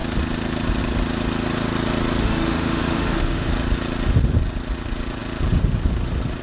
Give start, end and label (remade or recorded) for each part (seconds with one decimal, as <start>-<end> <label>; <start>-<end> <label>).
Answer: 0.0-2.2 recorded; 2.2-3.5 remade; 3.5-6.4 recorded